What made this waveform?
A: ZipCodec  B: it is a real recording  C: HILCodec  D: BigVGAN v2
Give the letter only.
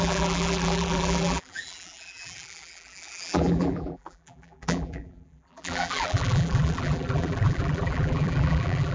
D